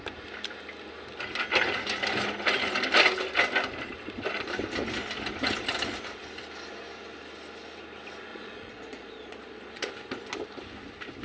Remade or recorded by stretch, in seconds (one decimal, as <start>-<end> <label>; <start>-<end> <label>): 0.0-8.3 recorded; 8.3-9.9 remade; 9.9-11.2 recorded